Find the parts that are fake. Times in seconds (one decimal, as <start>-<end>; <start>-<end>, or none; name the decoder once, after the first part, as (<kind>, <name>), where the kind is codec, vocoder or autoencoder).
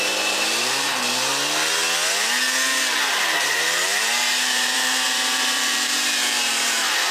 0.0-1.3 (vocoder, BigVGAN v2); 3.4-7.1